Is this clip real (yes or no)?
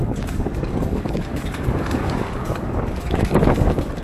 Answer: no